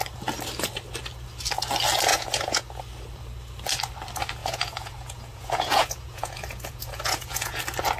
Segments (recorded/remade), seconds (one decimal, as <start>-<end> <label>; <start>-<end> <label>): 0.0-2.1 recorded; 2.1-2.8 remade; 2.8-4.4 recorded; 4.4-7.6 remade; 7.6-8.0 recorded